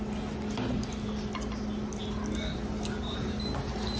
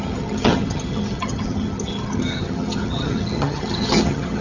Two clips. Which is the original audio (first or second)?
first